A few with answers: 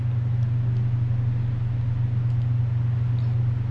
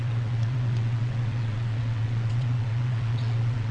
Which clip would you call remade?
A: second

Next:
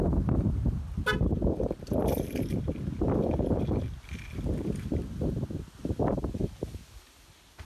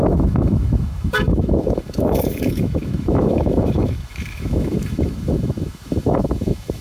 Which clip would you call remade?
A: second